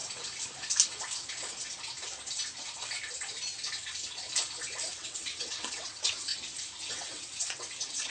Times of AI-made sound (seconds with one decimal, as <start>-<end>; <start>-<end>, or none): 4.9-6.3; 6.9-8.1